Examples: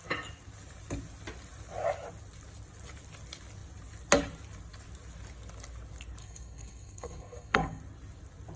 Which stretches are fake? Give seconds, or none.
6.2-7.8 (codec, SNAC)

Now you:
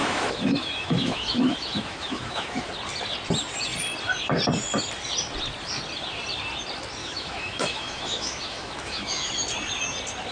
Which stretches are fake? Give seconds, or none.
0.0-2.7 (autoencoder, DAC-VAE); 7.0-9.3

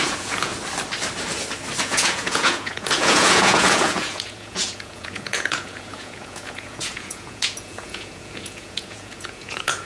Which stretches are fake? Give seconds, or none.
0.0-0.5 (vocoder, Vocos); 1.8-9.9